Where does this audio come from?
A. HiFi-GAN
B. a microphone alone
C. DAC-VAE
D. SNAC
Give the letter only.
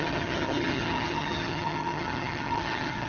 A